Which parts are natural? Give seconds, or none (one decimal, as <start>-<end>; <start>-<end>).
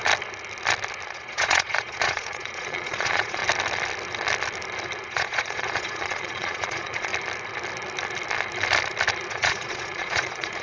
0.0-1.1; 3.4-5.1; 7.1-9.3